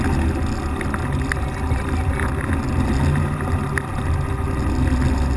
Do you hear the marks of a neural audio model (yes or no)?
no